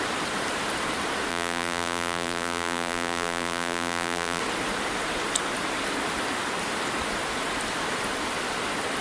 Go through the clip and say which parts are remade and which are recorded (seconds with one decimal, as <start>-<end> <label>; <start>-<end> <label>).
0.0-1.3 recorded; 1.3-4.4 remade; 4.4-9.0 recorded